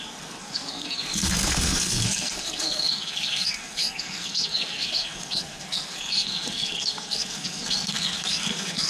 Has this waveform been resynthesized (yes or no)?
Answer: yes